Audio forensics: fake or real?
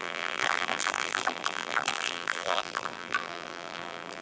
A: fake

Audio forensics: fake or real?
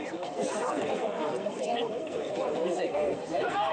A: fake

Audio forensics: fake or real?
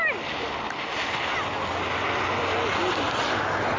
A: real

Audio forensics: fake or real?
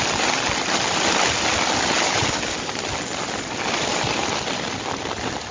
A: real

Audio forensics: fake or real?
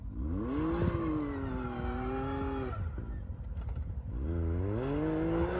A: real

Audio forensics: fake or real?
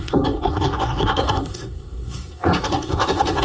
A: fake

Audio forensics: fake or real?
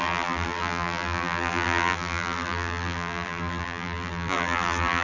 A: fake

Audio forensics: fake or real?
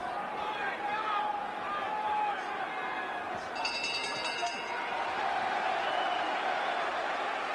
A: real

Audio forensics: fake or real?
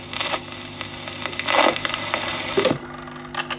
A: real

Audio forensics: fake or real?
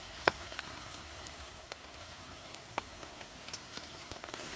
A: fake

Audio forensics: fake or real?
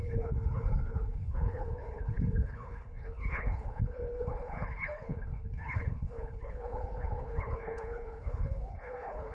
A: fake